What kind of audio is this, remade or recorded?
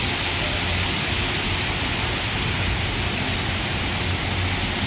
recorded